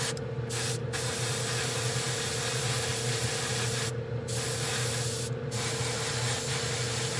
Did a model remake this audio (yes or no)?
no